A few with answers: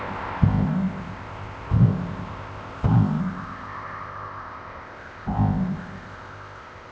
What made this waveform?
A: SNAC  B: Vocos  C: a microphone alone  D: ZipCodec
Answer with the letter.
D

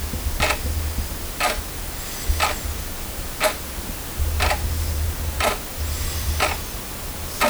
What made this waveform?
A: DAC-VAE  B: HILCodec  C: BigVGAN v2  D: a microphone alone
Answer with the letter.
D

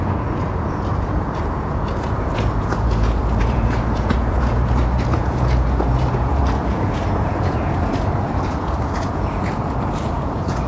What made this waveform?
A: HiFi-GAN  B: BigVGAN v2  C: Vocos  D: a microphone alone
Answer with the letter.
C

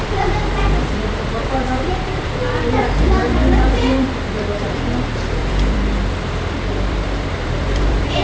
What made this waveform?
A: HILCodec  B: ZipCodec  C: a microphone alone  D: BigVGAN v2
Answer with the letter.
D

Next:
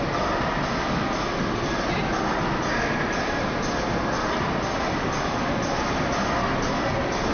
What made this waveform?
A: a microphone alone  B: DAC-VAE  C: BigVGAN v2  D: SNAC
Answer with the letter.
A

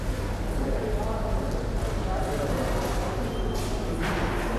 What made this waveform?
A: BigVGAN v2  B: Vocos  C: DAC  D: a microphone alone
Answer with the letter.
D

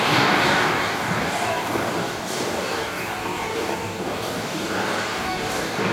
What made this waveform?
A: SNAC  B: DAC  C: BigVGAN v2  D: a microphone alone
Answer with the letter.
B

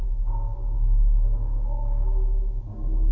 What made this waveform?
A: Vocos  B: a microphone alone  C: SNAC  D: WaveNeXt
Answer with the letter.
B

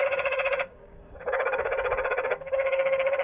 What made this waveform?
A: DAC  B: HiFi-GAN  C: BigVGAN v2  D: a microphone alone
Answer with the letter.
A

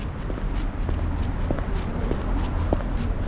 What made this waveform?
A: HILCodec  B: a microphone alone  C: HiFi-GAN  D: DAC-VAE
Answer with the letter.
B